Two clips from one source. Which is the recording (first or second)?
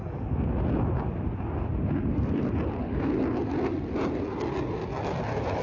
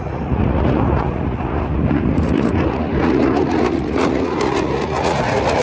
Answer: first